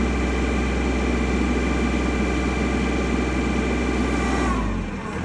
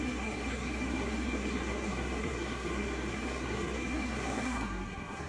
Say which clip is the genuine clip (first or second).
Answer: first